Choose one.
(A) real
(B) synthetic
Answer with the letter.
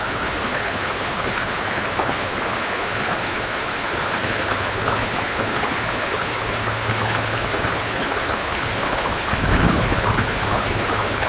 B